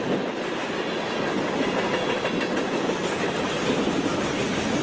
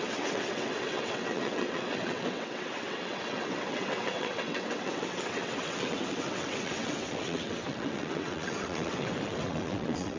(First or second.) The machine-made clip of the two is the second